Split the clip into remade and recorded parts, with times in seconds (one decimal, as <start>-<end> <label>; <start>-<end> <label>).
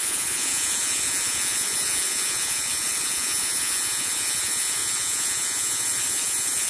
0.0-6.7 remade